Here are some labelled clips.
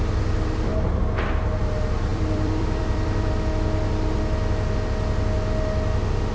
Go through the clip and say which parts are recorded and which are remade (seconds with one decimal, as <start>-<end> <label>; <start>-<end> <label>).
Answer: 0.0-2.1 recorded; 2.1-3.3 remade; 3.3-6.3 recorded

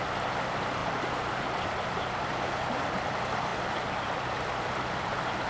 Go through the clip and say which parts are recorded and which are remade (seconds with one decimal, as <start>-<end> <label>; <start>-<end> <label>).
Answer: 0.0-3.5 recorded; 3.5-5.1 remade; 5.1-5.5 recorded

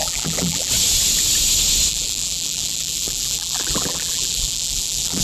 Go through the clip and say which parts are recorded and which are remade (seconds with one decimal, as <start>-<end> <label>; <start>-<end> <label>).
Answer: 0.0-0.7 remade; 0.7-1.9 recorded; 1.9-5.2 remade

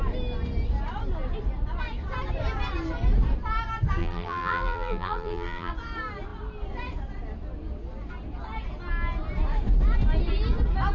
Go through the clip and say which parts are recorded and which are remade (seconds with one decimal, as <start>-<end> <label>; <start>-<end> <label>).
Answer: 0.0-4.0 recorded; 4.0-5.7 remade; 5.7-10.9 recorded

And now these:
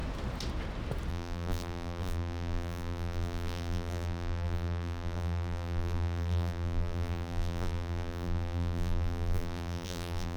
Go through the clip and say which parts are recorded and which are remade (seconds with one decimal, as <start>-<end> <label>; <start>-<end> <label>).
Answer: 0.0-1.1 recorded; 1.1-10.4 remade

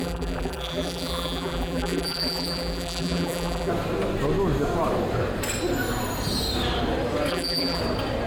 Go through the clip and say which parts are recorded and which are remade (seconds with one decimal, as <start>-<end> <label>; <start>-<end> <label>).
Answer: 0.0-3.7 remade; 3.7-7.3 recorded; 7.3-7.8 remade; 7.8-8.3 recorded

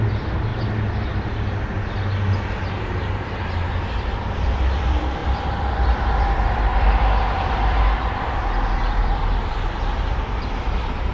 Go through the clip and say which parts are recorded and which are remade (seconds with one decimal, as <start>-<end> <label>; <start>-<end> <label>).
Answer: 0.0-0.5 remade; 0.5-3.7 recorded; 3.7-11.1 remade